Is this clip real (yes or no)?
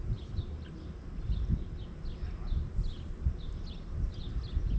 yes